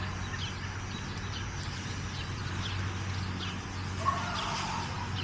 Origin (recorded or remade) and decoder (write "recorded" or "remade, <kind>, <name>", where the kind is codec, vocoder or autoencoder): recorded